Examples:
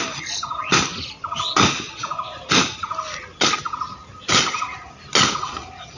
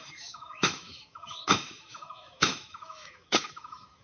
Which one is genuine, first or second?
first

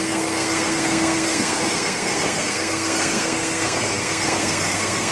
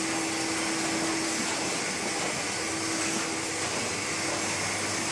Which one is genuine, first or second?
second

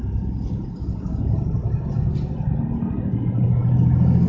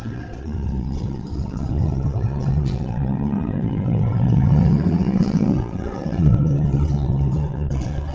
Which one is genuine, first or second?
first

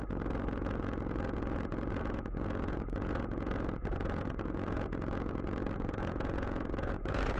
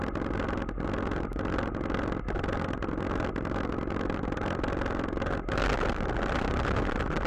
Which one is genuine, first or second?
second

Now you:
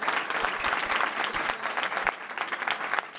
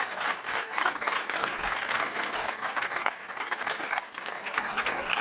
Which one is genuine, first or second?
first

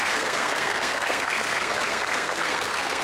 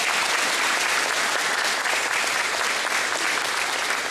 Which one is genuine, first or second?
second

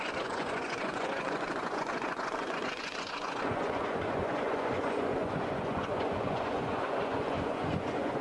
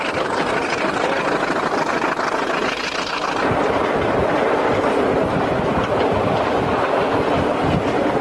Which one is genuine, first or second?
second